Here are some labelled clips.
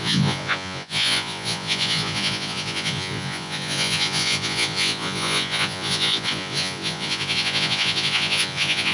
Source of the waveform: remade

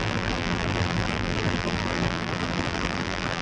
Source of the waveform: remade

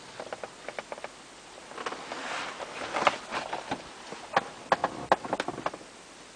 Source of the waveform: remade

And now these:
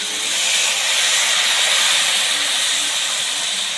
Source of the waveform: remade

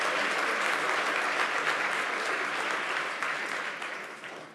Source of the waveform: recorded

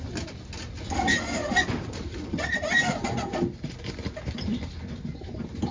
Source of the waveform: recorded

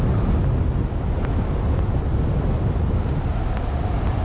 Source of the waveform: recorded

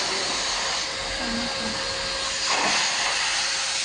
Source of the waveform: recorded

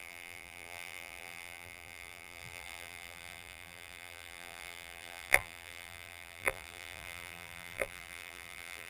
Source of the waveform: remade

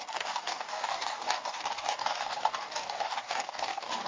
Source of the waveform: remade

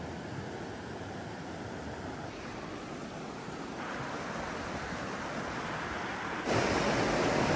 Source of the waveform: recorded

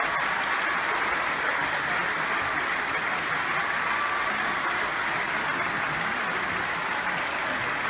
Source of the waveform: recorded